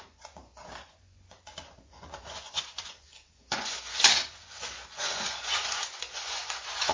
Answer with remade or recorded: remade